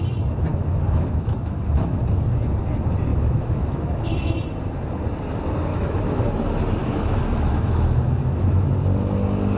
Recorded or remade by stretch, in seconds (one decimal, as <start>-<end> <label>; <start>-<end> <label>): 0.0-0.5 recorded; 0.5-2.0 remade; 2.0-3.1 recorded; 3.1-4.3 remade; 4.3-5.7 recorded; 5.7-6.3 remade; 6.3-6.8 recorded; 6.8-8.7 remade; 8.7-9.6 recorded